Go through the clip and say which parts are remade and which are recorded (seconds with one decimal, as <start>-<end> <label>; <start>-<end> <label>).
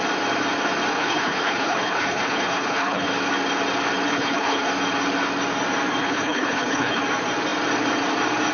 0.0-0.9 recorded; 0.9-3.1 remade; 3.1-4.1 recorded; 4.1-4.7 remade; 4.7-6.0 recorded; 6.0-7.0 remade; 7.0-8.5 recorded